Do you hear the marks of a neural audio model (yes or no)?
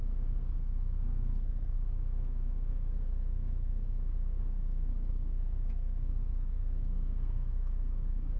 yes